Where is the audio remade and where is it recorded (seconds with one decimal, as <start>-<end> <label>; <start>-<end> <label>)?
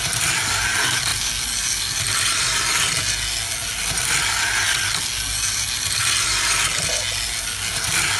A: 0.0-8.2 recorded